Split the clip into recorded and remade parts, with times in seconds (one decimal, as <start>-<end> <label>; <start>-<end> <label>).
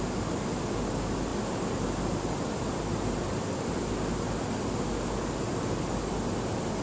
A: 0.0-6.8 recorded